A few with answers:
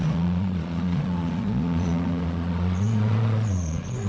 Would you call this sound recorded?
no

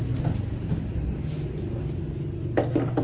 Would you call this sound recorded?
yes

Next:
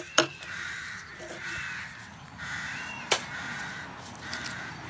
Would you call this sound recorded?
yes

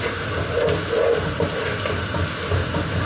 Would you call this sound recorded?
yes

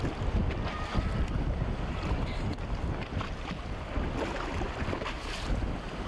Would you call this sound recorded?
yes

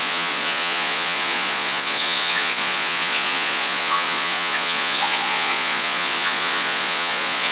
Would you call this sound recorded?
no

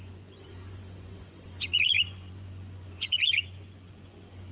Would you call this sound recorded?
no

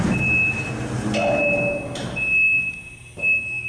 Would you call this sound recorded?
yes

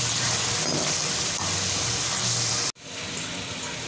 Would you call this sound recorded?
yes